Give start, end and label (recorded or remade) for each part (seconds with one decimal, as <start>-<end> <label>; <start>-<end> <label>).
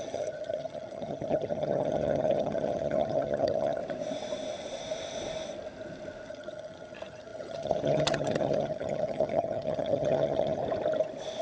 0.0-3.8 remade; 3.8-6.3 recorded; 6.3-10.6 remade; 10.6-11.4 recorded